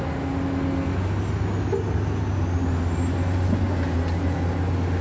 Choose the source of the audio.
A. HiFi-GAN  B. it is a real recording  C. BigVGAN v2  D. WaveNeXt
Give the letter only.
B